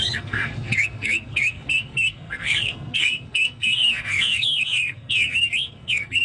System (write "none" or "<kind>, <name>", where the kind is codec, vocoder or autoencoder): codec, SNAC